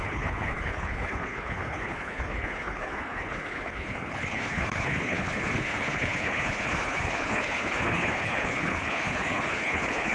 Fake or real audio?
fake